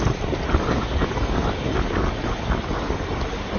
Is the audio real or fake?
real